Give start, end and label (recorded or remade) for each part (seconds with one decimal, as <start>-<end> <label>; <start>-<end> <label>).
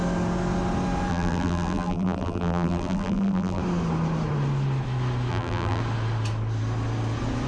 0.0-1.1 recorded; 1.1-3.6 remade; 3.6-5.3 recorded; 5.3-5.8 remade; 5.8-7.5 recorded